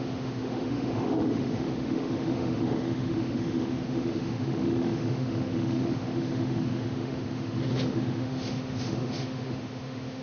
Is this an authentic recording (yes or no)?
no